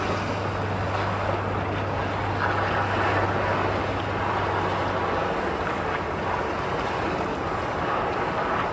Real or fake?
real